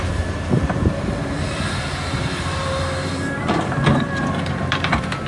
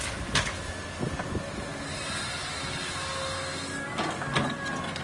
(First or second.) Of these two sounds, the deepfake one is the first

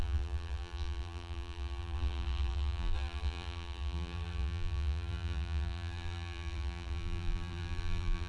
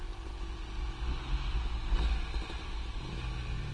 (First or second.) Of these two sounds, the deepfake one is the first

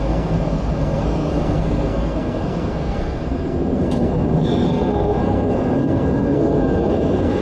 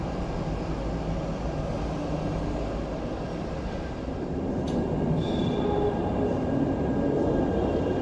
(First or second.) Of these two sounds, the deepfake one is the first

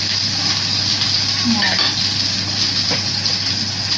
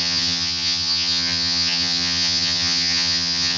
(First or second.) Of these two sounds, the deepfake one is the second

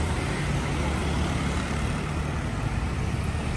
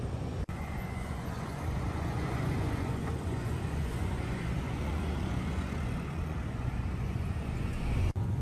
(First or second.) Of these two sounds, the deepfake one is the second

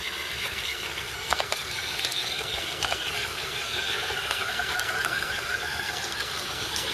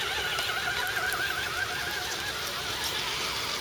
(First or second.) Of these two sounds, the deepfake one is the first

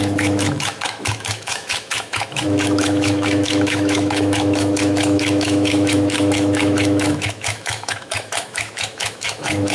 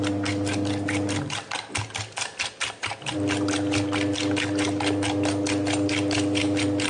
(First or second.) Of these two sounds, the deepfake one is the first